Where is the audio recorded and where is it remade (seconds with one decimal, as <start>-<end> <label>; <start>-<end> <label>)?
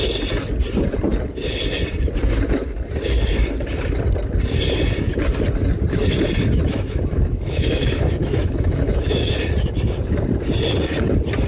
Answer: 0.0-6.7 recorded; 6.7-9.4 remade; 9.4-11.5 recorded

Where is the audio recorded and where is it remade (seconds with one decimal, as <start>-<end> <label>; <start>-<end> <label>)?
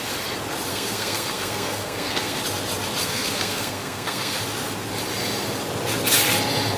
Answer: 0.0-0.7 recorded; 0.7-2.4 remade; 2.4-3.0 recorded; 3.0-4.4 remade; 4.4-6.8 recorded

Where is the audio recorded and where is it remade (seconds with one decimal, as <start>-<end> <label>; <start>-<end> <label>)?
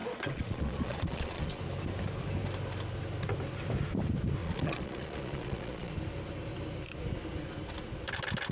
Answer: 0.0-1.6 remade; 1.6-4.4 recorded; 4.4-5.9 remade; 5.9-8.5 recorded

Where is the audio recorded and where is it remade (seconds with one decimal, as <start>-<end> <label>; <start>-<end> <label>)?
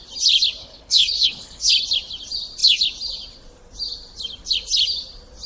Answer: 0.0-0.6 recorded; 0.6-1.7 remade; 1.7-5.5 recorded